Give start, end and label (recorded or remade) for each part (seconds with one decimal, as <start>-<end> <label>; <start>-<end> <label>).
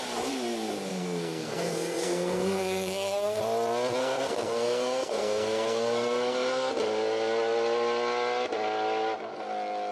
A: 0.0-0.9 recorded; 0.9-3.4 remade; 3.4-4.0 recorded; 4.0-6.7 remade; 6.7-9.9 recorded